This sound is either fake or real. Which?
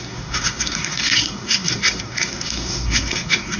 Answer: fake